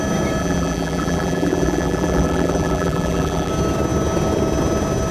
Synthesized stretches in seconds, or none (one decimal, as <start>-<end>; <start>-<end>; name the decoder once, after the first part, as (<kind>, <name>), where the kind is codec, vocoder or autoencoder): 0.4-3.5 (vocoder, BigVGAN v2)